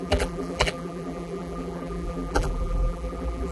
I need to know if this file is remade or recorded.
remade